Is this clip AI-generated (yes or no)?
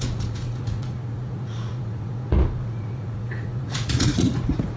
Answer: yes